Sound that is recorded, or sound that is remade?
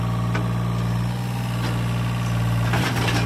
recorded